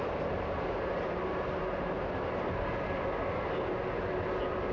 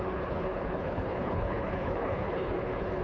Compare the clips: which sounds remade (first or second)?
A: second